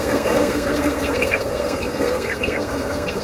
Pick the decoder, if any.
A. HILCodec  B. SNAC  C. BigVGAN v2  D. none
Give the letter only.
B